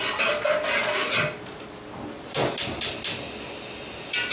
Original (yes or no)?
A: yes